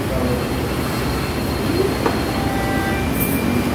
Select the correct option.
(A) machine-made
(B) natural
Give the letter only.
B